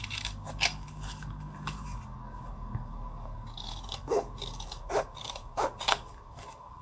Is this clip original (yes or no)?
no